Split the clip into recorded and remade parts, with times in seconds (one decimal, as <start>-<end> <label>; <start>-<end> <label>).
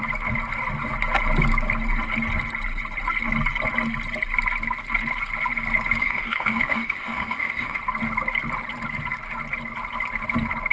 0.0-6.0 recorded; 6.0-7.8 remade; 7.8-10.7 recorded